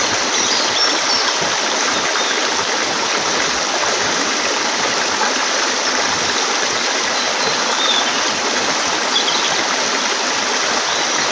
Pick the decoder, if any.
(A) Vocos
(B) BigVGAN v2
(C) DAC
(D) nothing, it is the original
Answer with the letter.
D